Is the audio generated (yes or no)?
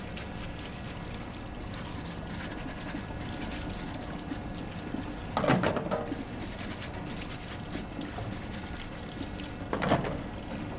no